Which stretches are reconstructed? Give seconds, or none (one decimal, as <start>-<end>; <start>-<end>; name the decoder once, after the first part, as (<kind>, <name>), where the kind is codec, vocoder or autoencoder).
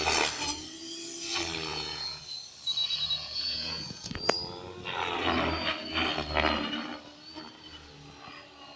1.7-2.2 (vocoder, Vocos); 2.8-4.1